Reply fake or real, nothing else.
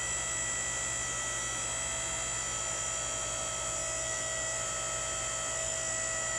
real